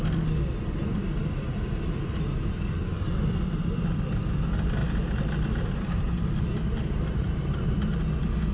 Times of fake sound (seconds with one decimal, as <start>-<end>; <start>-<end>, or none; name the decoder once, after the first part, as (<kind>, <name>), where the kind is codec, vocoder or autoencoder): 4.8-8.0 (vocoder, BigVGAN v2)